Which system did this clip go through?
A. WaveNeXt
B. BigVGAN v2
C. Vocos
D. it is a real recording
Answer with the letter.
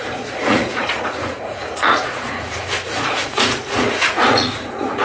C